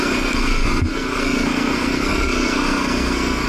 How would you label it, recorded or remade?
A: remade